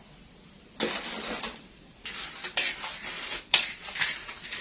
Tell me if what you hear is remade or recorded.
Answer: recorded